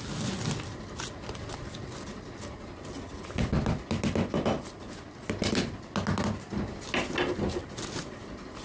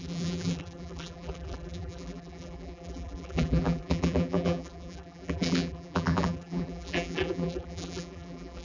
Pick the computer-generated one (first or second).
second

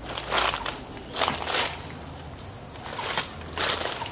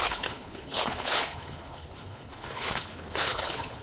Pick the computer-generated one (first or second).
second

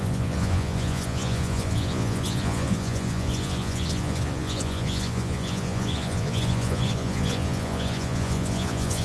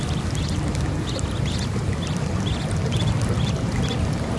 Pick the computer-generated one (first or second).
first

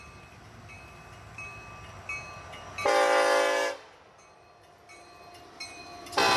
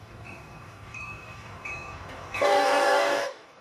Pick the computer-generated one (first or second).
second